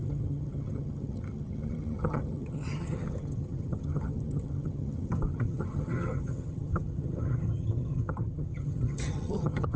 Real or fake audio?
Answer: fake